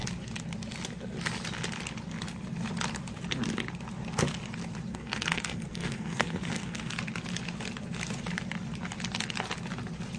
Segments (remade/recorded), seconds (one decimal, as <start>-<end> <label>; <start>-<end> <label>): 0.0-4.9 recorded; 4.9-6.9 remade; 6.9-10.2 recorded

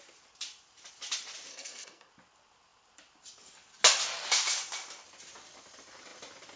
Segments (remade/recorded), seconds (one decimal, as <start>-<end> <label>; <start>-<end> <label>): 0.0-1.5 recorded; 1.5-2.1 remade; 2.1-6.6 recorded

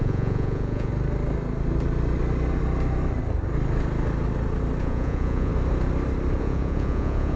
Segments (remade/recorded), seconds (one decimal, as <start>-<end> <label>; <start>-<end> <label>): 0.0-0.9 remade; 0.9-4.8 recorded; 4.8-5.5 remade; 5.5-6.4 recorded; 6.4-7.4 remade

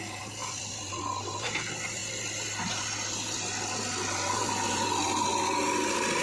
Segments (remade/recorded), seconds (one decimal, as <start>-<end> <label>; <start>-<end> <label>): 0.0-0.4 recorded; 0.4-1.0 remade; 1.0-6.2 recorded

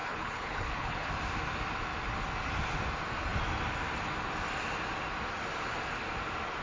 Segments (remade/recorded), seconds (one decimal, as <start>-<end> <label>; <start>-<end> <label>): 0.0-1.1 remade; 1.1-6.6 recorded

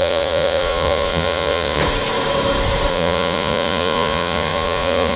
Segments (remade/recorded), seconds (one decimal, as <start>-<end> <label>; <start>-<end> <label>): 0.0-1.8 remade; 1.8-2.9 recorded; 2.9-5.2 remade

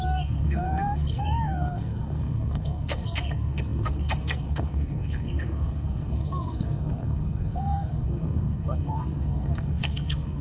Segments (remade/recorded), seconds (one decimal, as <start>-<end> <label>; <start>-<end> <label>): 0.0-10.4 remade